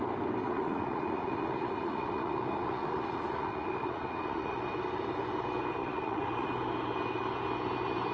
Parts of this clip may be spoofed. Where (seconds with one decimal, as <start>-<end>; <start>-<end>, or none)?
0.4-4.6; 5.8-6.5